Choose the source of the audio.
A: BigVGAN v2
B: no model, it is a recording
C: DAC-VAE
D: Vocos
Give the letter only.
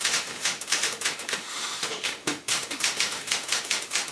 C